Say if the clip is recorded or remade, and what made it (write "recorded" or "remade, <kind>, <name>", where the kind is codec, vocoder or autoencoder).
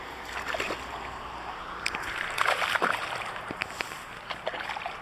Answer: remade, vocoder, BigVGAN v2